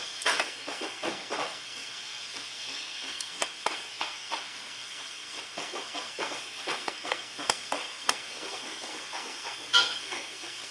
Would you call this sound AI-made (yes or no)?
yes